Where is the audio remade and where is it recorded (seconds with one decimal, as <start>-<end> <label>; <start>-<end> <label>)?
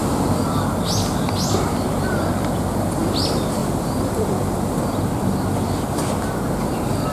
0.0-7.1 recorded